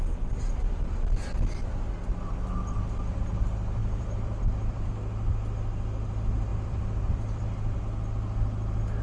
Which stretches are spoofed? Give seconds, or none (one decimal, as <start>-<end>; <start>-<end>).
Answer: 3.8-4.9; 6.5-7.8